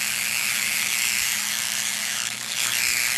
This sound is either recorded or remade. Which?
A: remade